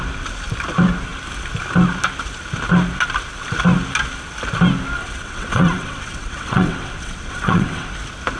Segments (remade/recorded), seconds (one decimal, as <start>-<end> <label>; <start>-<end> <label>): 0.0-5.0 recorded; 5.0-7.9 remade; 7.9-8.4 recorded

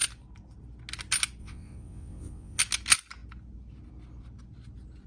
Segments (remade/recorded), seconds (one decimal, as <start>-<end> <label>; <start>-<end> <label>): 0.0-1.4 recorded; 1.4-2.6 remade; 2.6-5.1 recorded

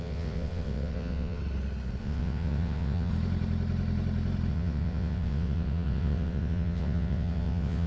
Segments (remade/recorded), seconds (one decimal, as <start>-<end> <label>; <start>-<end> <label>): 0.0-1.4 remade; 1.4-2.0 recorded; 2.0-3.1 remade; 3.1-4.5 recorded; 4.5-7.9 remade

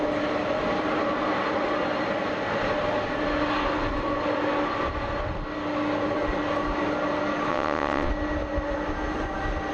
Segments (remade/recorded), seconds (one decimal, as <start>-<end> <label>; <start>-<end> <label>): 0.0-7.5 recorded; 7.5-8.1 remade; 8.1-9.7 recorded

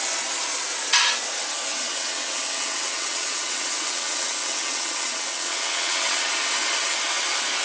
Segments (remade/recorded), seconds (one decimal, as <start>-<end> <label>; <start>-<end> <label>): 0.0-1.7 recorded; 1.7-6.3 remade; 6.3-7.6 recorded

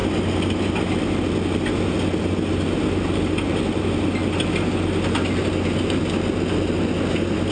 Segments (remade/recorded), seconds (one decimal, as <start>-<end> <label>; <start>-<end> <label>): 0.0-7.5 recorded

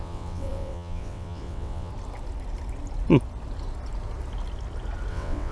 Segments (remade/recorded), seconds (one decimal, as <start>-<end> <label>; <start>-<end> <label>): 0.0-1.9 remade; 1.9-5.1 recorded; 5.1-5.5 remade